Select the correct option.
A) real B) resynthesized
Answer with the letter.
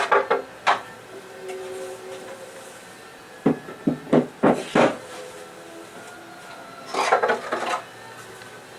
A